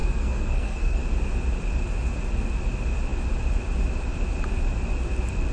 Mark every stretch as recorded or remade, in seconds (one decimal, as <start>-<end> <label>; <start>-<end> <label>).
0.0-1.0 remade; 1.0-5.5 recorded